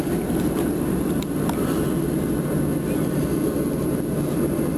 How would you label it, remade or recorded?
recorded